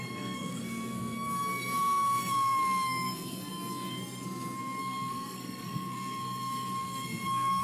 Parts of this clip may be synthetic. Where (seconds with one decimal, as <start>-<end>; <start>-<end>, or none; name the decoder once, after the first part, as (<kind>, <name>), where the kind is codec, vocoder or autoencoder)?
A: 0.0-7.6 (codec, SNAC)

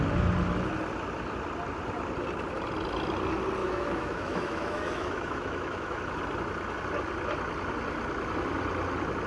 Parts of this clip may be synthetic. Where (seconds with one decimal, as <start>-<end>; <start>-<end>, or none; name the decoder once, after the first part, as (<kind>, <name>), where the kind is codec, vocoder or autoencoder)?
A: 3.6-6.0 (autoencoder, DAC-VAE)

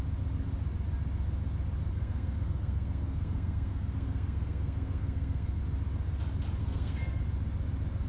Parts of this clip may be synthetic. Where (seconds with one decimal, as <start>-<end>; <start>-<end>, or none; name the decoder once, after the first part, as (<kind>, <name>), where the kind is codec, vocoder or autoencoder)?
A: 1.9-5.6 (codec, SNAC); 6.6-7.2

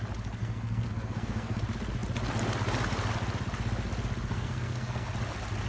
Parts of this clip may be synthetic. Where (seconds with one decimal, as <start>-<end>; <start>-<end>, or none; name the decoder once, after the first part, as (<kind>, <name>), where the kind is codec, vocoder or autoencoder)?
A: 0.4-1.6 (codec, SNAC); 4.3-5.1

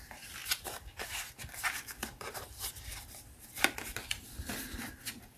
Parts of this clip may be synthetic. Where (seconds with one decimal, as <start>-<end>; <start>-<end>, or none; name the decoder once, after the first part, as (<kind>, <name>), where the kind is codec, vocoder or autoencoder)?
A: 0.0-5.4 (vocoder, BigVGAN v2)